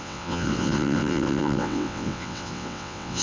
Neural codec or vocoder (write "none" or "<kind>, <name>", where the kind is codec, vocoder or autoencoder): vocoder, WaveNeXt